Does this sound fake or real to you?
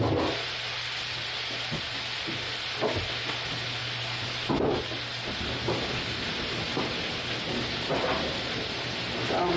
real